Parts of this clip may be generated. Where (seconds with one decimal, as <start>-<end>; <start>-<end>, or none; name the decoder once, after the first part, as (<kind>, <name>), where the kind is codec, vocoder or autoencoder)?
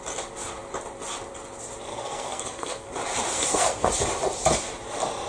1.9-2.9 (codec, SNAC); 3.3-3.9